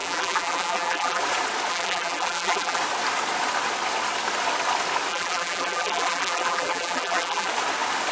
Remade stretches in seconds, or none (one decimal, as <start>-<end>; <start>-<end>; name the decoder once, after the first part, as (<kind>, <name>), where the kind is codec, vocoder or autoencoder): 0.0-1.2 (vocoder, BigVGAN v2); 1.7-2.8; 5.1-7.5